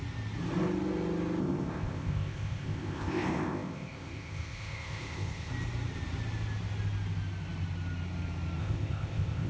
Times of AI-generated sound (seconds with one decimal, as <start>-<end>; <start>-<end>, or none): 1.4-5.5; 8.6-9.5

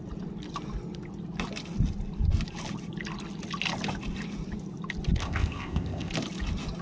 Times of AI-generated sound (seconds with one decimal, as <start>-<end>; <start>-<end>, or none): 5.2-6.1

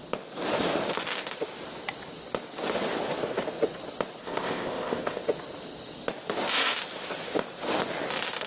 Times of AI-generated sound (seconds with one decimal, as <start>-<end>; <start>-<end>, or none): 4.2-5.2

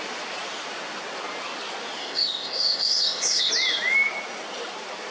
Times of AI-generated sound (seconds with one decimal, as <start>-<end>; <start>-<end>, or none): 2.0-3.5

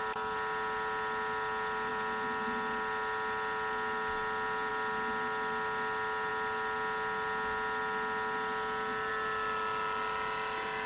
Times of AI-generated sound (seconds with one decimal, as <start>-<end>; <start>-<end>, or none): none

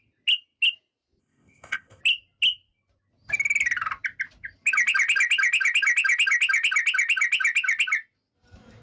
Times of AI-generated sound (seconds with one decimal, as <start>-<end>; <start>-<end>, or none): 1.2-2.0